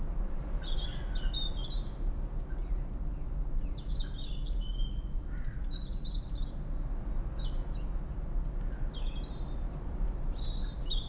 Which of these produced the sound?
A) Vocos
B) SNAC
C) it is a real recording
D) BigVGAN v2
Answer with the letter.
C